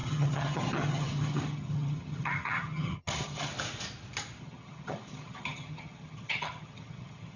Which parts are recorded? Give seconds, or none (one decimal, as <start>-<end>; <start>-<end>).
3.5-4.4